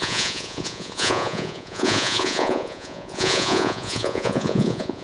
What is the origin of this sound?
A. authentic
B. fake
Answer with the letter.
B